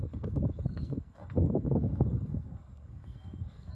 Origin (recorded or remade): remade